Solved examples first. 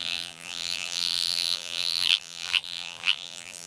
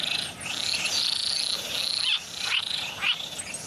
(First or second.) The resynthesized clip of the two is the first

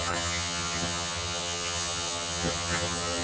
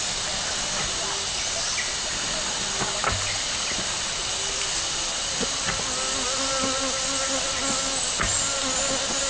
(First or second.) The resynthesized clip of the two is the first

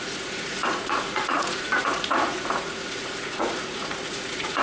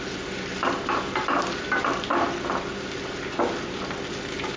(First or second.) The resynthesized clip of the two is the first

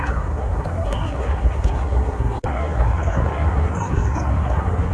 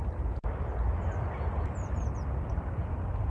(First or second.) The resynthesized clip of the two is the first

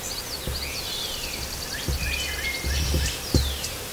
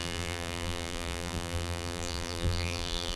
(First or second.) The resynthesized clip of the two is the second